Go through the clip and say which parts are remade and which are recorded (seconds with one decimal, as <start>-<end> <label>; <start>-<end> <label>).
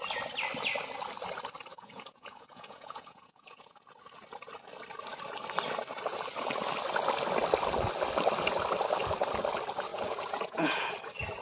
0.0-1.7 recorded; 1.7-3.9 remade; 3.9-9.9 recorded; 9.9-10.9 remade; 10.9-11.4 recorded